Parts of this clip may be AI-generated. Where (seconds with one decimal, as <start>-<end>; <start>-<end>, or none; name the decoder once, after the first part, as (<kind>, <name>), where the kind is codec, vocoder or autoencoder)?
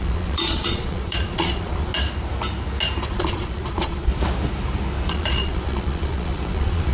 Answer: 0.0-1.9 (vocoder, Vocos); 3.0-4.1; 5.1-6.9